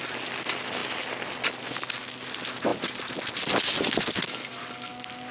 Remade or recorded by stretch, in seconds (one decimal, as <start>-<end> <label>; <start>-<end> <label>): 0.0-0.8 recorded; 0.8-1.5 remade; 1.5-5.3 recorded